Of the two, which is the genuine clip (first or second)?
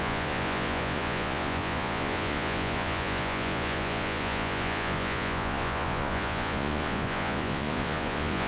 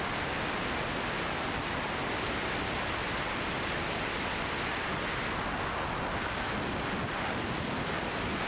second